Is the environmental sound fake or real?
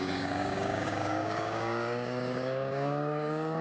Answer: fake